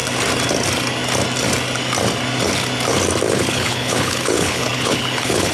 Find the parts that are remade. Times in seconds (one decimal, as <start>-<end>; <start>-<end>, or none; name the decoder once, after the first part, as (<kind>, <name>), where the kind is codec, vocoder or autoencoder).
3.3-5.5 (codec, HILCodec)

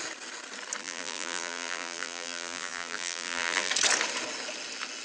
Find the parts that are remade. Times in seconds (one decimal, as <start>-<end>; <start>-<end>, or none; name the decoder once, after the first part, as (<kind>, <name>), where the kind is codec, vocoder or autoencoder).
0.8-3.7 (vocoder, BigVGAN v2)